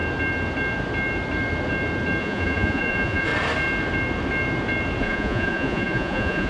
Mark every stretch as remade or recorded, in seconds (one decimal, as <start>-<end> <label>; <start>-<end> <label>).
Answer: 0.0-2.2 recorded; 2.2-3.3 remade; 3.3-5.0 recorded; 5.0-6.5 remade